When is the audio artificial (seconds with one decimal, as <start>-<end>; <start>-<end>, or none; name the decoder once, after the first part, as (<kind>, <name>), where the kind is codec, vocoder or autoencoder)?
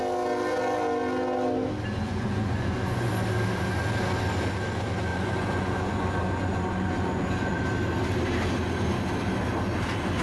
2.0-3.1 (vocoder, Vocos); 5.1-7.6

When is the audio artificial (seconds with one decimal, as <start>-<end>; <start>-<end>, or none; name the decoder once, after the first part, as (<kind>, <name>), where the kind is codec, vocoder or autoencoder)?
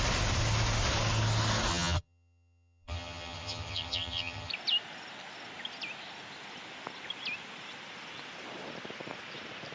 1.7-4.5 (vocoder, HiFi-GAN)